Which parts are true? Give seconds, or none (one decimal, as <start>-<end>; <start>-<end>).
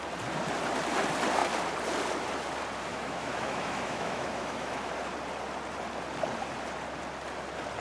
0.0-2.9; 4.9-7.8